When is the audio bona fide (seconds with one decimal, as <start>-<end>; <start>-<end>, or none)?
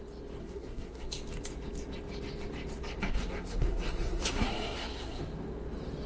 0.0-0.4; 1.1-3.1; 5.2-6.1